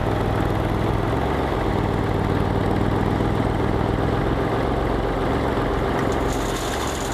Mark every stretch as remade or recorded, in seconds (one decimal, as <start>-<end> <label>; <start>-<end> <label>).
0.0-7.1 recorded